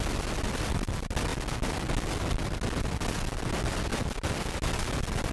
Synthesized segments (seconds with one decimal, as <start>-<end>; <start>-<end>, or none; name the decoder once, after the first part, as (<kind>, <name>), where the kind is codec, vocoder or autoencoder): none